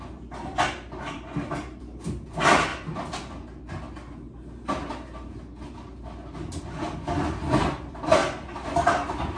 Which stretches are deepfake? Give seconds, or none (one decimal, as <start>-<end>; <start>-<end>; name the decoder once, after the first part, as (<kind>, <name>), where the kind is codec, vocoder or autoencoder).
0.0-2.7 (vocoder, BigVGAN v2); 6.6-8.2; 8.9-9.4